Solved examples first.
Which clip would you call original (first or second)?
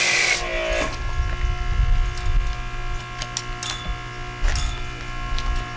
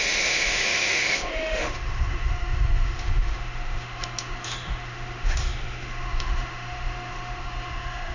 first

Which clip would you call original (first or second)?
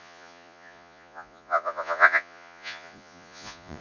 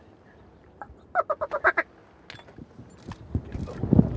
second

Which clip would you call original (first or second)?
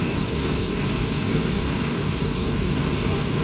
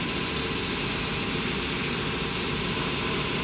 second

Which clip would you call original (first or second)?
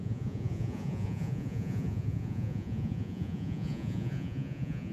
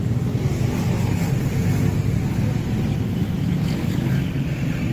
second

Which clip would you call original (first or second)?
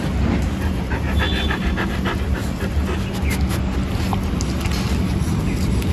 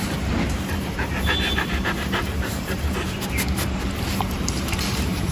first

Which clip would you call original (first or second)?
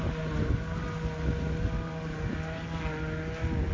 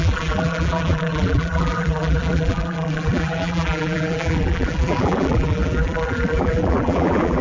first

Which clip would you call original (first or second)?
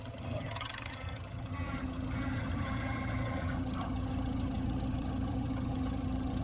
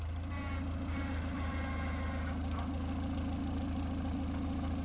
second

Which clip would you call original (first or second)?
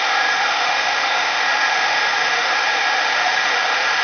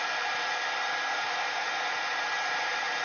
second